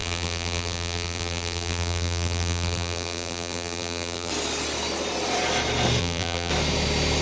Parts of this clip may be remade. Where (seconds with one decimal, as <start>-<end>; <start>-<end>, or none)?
0.0-4.3; 6.0-6.5

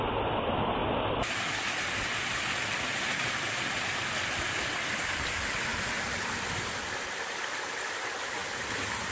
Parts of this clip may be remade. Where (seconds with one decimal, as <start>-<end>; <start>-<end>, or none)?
0.8-1.3

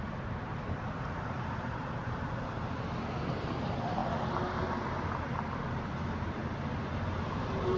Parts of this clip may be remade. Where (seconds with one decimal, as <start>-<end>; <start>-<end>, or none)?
0.0-4.0; 5.6-6.4; 7.1-7.8

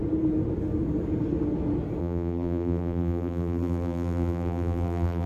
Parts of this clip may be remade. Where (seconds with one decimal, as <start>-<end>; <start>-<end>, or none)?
2.0-5.3

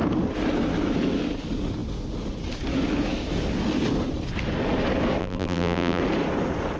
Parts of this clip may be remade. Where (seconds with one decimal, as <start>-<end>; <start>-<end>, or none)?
5.2-6.0

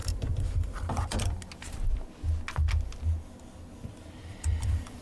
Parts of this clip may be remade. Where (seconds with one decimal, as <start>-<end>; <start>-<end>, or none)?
0.0-1.4; 4.3-5.0